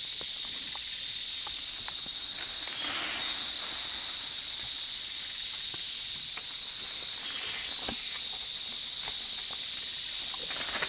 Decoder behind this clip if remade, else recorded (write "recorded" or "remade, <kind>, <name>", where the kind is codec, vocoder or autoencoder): recorded